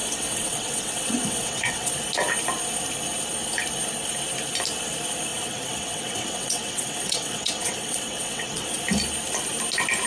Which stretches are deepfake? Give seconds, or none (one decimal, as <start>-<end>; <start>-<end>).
0.0-1.9; 5.3-8.8